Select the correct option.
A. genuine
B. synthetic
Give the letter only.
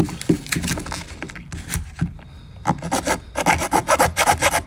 A